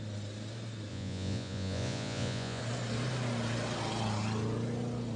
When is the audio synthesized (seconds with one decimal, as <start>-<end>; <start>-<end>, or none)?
0.9-2.6